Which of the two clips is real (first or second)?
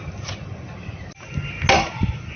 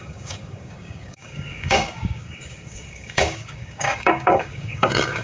first